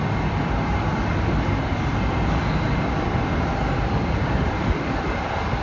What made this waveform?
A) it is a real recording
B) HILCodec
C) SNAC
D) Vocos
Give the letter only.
A